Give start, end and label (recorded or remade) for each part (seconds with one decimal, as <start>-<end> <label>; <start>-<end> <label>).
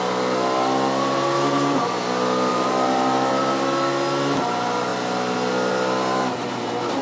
0.0-2.5 recorded; 2.5-3.3 remade; 3.3-7.0 recorded